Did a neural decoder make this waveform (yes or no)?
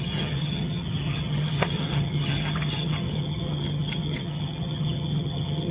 yes